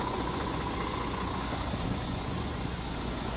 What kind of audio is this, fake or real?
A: fake